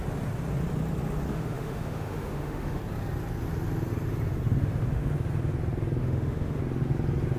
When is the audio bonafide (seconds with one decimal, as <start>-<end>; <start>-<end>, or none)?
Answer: 0.0-1.3; 2.8-4.6; 5.1-6.0; 6.6-7.4

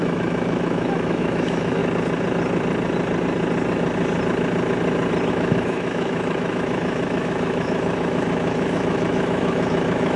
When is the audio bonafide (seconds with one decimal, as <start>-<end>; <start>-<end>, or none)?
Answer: 1.8-5.3

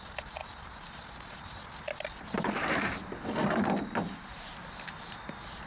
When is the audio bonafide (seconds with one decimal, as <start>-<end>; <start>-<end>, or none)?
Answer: 0.0-5.7

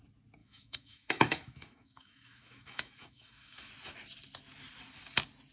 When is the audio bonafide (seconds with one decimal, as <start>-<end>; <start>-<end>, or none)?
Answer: 0.0-0.4; 3.7-5.5

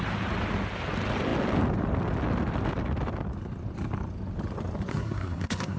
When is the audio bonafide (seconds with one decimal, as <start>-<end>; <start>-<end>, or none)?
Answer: 0.0-4.9

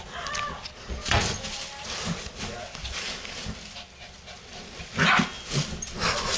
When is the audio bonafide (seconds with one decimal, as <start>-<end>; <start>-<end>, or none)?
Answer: 0.0-6.4

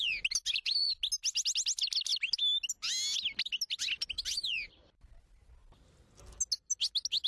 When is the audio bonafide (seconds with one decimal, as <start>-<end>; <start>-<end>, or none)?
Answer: 0.0-7.3

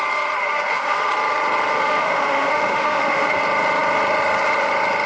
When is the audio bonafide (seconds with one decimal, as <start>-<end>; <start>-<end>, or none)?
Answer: 0.0-0.4; 1.1-1.7; 3.4-5.1